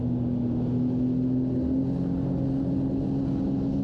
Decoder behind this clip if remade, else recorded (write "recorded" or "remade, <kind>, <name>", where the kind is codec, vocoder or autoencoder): recorded